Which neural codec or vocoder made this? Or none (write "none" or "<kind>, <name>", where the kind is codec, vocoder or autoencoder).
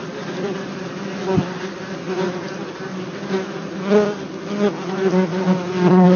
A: none